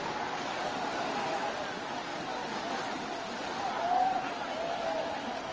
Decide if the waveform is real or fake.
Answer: real